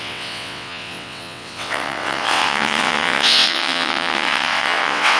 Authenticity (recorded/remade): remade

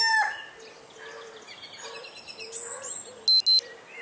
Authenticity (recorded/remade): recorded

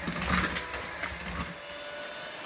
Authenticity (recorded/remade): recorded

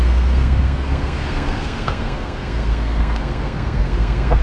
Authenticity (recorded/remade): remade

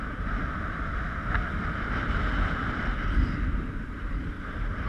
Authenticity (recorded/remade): remade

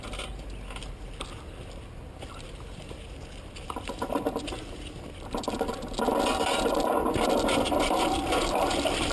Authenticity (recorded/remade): recorded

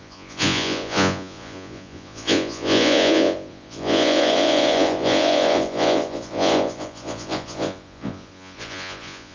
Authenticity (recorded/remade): remade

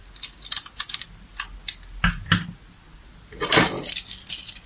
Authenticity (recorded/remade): recorded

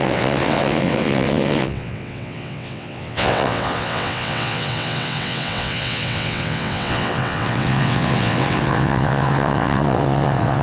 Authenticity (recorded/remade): remade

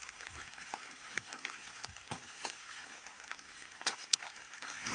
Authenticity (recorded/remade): remade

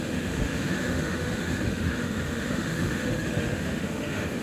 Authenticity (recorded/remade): remade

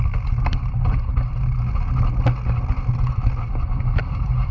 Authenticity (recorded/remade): recorded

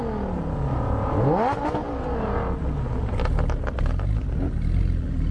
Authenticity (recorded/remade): recorded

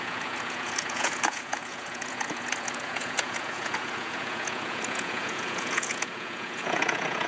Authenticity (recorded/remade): remade